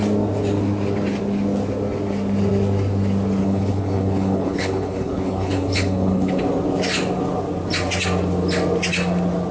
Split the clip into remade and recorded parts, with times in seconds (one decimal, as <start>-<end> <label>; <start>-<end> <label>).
0.0-3.4 recorded; 3.4-6.4 remade; 6.4-9.5 recorded